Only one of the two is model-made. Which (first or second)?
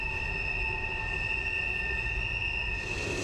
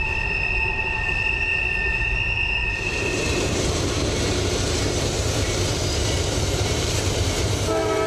second